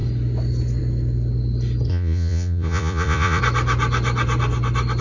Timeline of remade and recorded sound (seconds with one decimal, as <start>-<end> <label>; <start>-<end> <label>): 0.0-1.9 recorded; 1.9-3.4 remade; 3.4-5.0 recorded